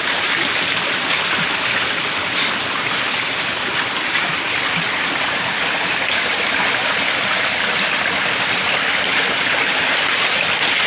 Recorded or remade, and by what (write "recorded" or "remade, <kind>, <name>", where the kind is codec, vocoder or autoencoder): recorded